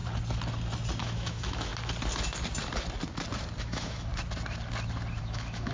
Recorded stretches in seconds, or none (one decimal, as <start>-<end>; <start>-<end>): 0.0-1.0; 1.7-3.6; 4.1-5.2